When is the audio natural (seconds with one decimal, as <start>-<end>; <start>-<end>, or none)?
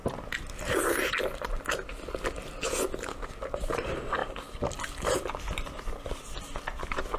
0.0-4.2